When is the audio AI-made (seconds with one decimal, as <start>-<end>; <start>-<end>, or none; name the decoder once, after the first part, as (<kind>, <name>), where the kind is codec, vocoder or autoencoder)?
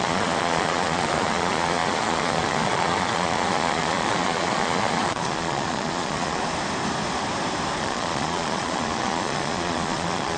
0.0-6.4 (vocoder, Vocos); 7.8-10.4